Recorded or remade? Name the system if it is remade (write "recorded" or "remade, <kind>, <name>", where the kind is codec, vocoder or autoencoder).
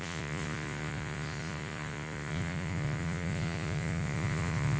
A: remade, vocoder, Vocos